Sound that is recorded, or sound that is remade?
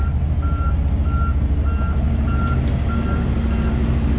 recorded